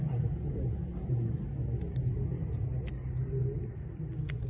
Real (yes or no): yes